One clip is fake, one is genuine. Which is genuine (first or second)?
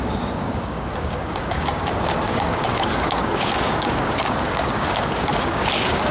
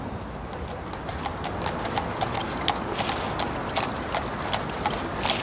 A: second